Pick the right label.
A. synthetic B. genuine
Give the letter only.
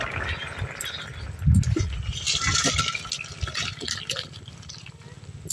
B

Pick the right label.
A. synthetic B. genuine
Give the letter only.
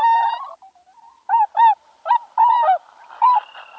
B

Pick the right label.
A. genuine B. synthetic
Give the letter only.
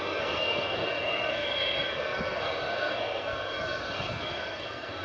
B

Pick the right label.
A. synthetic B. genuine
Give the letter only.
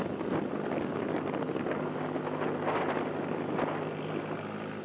B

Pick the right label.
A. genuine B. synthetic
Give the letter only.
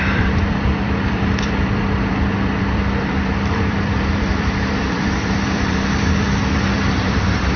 B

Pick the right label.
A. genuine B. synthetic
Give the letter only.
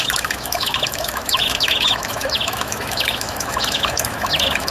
B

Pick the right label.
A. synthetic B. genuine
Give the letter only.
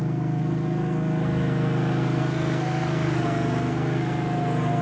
A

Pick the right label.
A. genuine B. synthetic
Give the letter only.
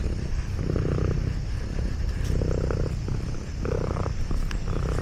A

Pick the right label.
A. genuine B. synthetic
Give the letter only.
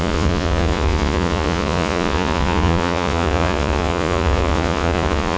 B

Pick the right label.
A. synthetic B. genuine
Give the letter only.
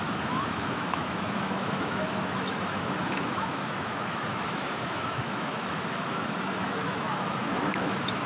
A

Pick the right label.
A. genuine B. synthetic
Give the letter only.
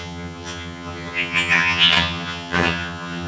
B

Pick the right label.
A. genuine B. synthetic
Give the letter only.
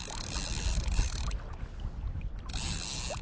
A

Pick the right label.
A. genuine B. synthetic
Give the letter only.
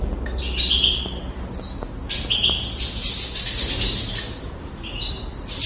A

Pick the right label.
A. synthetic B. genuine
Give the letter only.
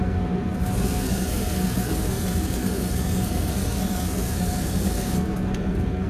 A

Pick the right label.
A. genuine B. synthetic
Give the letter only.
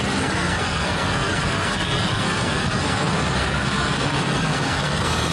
B